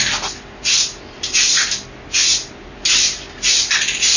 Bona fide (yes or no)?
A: yes